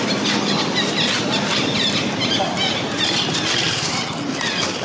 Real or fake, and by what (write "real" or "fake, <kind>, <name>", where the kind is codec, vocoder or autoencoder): real